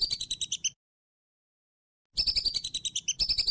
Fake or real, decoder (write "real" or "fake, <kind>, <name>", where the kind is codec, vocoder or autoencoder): real